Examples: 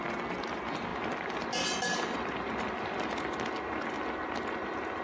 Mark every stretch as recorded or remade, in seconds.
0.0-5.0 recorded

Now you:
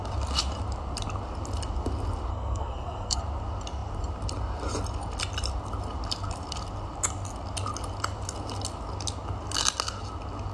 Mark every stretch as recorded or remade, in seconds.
0.0-2.3 recorded; 2.3-3.2 remade; 3.2-10.5 recorded